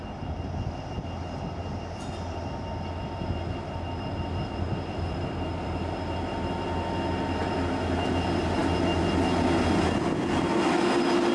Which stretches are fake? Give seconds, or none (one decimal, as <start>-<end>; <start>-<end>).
none